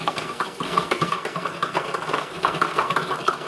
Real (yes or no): no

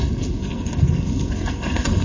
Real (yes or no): no